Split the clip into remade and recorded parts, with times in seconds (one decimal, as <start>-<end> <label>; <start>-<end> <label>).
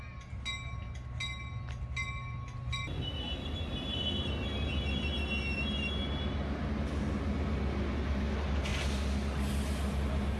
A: 0.0-10.4 recorded